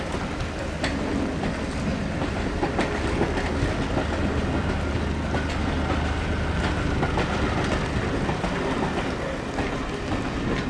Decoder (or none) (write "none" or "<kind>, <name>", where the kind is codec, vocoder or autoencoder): none